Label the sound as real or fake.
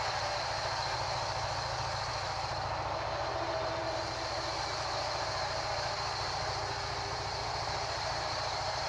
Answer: real